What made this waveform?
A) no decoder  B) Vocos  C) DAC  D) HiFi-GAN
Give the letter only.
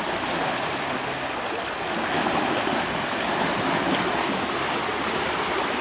A